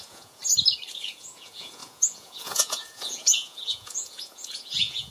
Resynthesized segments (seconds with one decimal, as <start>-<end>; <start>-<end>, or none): 0.0-0.4; 0.9-5.1